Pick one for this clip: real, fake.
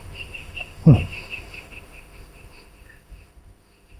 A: fake